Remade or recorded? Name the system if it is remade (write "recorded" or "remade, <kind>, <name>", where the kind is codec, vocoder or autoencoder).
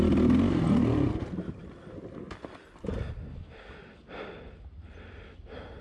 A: recorded